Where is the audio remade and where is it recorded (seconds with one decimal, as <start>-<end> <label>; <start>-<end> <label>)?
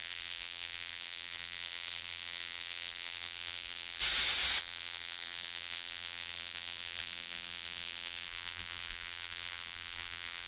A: 0.0-4.0 remade; 4.0-4.6 recorded; 4.6-10.5 remade